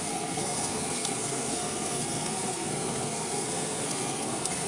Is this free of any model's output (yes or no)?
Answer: no